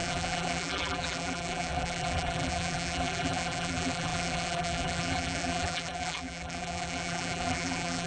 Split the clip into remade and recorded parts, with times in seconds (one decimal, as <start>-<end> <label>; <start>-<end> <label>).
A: 0.0-8.1 remade